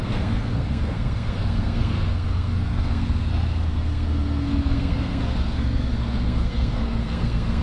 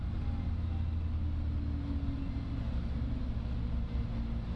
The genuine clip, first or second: second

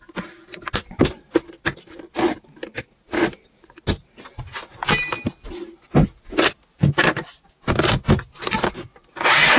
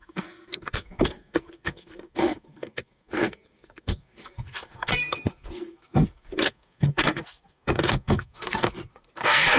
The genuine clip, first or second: first